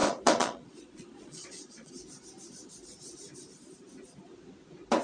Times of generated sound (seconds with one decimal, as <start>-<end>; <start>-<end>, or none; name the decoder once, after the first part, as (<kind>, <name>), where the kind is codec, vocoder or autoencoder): 0.0-1.9 (vocoder, Vocos)